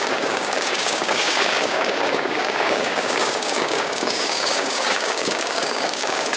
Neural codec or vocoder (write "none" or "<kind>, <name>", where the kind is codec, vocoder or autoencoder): codec, DAC